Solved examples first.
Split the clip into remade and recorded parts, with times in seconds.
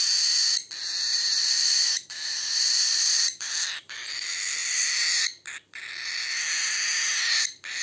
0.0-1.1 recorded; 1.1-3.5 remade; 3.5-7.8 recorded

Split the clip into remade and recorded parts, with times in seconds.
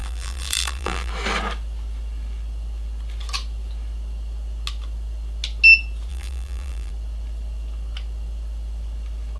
0.0-1.1 remade; 1.1-6.1 recorded; 6.1-6.9 remade; 6.9-9.4 recorded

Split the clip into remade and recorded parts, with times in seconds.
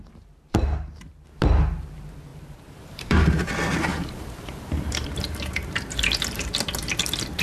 0.0-2.3 recorded; 2.3-3.5 remade; 3.5-3.9 recorded; 3.9-6.5 remade; 6.5-7.4 recorded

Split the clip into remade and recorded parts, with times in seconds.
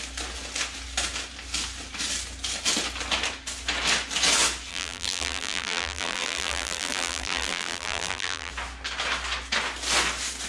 0.0-4.7 recorded; 4.7-8.5 remade; 8.5-10.5 recorded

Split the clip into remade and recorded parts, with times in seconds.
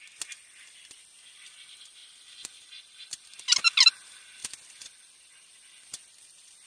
0.0-2.0 recorded; 2.0-3.4 remade; 3.4-4.4 recorded; 4.4-6.7 remade